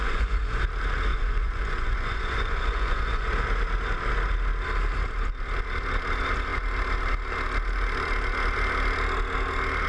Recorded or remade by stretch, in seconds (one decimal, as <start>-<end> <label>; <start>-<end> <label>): 0.0-0.6 remade; 0.6-1.1 recorded; 1.1-3.3 remade; 3.3-9.9 recorded